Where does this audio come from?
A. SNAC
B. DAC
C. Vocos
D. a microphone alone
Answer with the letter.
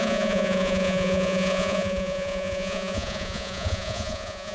C